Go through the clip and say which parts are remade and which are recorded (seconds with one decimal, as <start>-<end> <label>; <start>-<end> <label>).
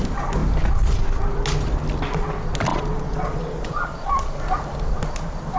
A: 0.0-2.7 recorded; 2.7-4.3 remade; 4.3-5.6 recorded